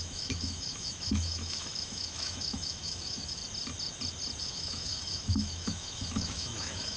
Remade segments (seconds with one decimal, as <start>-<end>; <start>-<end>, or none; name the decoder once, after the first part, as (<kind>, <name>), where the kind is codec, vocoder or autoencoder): 0.0-3.4 (autoencoder, DAC-VAE); 4.4-7.0